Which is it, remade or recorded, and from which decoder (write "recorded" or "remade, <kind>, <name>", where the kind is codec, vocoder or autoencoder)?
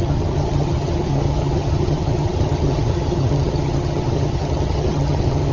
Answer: remade, vocoder, HiFi-GAN